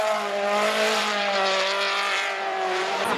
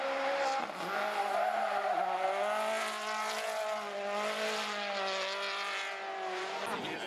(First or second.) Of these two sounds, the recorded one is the second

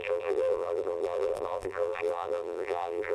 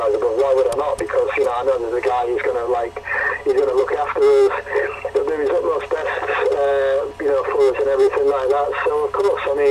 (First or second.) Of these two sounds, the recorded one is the second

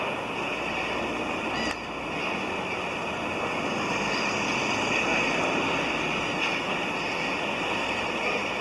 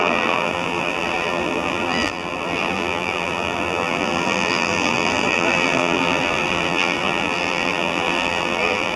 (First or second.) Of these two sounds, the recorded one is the first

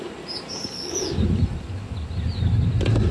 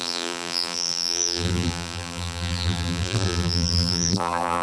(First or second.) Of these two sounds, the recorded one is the first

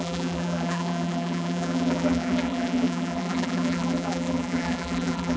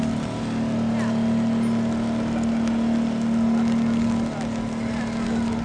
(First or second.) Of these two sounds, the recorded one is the second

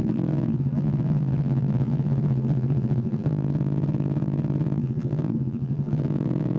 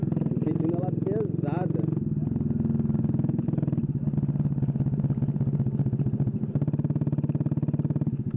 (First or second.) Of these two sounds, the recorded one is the second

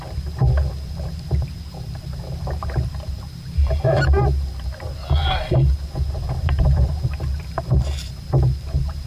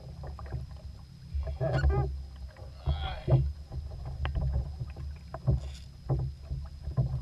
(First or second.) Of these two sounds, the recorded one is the second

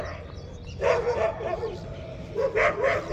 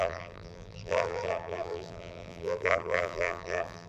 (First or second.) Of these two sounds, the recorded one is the first